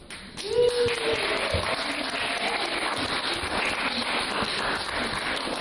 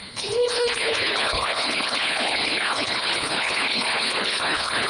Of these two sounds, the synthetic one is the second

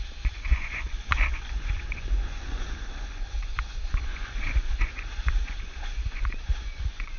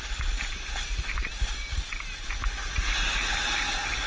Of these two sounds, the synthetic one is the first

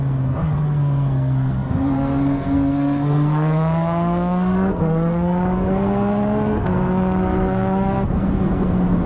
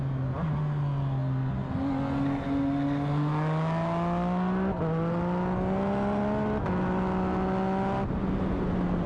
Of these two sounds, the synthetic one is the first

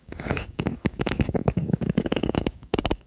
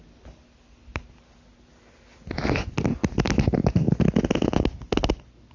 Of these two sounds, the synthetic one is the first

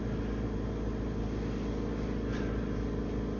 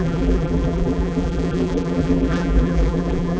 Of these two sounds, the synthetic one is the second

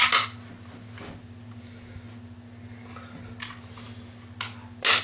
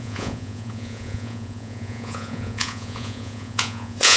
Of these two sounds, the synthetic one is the second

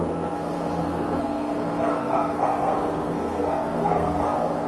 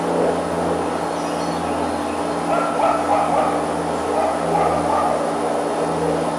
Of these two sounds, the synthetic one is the first